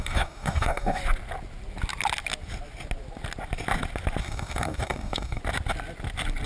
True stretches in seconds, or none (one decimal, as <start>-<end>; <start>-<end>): 1.0-4.2; 5.4-6.5